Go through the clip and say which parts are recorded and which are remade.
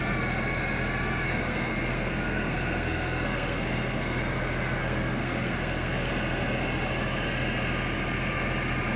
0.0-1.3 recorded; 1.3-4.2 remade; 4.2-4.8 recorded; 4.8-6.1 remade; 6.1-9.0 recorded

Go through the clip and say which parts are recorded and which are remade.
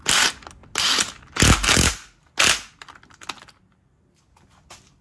0.0-5.0 recorded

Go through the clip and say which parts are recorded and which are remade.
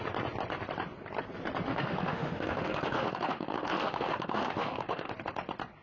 0.0-1.7 recorded; 1.7-5.1 remade; 5.1-5.8 recorded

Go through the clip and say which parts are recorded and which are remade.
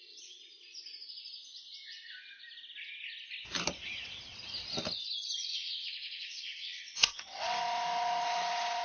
0.0-3.8 recorded; 3.8-4.4 remade; 4.4-5.5 recorded; 5.5-7.6 remade; 7.6-8.8 recorded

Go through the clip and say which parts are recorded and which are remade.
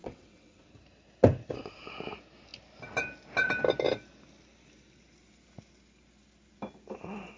0.0-0.7 remade; 0.7-7.4 recorded